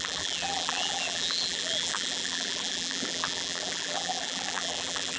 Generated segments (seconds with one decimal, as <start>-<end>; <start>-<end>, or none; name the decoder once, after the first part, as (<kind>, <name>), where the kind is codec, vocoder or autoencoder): 0.0-5.2 (vocoder, BigVGAN v2)